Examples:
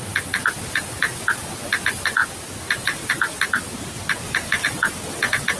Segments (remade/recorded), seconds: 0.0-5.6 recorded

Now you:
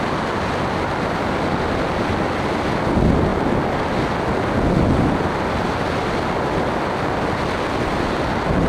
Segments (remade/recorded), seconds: 0.0-8.7 recorded

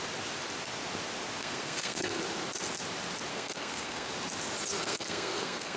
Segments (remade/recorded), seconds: 0.0-1.4 recorded; 1.4-2.2 remade; 2.2-3.3 recorded; 3.3-4.1 remade; 4.1-4.8 recorded; 4.8-5.8 remade